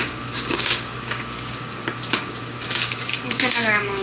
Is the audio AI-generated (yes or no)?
yes